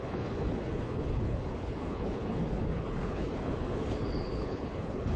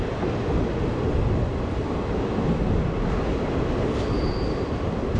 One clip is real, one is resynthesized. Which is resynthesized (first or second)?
first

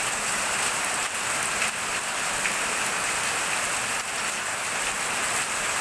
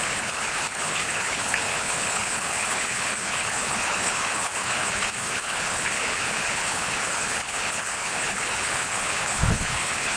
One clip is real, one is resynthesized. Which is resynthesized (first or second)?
second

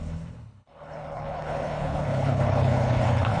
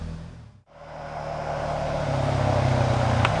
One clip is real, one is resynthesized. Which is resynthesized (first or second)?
first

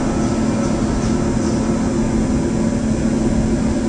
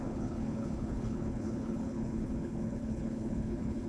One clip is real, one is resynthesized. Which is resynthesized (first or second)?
second